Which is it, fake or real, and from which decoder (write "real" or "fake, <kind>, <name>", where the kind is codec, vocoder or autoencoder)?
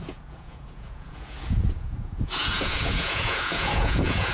fake, vocoder, Vocos